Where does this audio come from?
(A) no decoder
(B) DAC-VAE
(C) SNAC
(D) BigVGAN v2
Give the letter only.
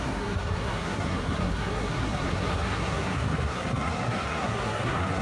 C